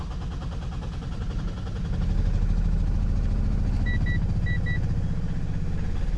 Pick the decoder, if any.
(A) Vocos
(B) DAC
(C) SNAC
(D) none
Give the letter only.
D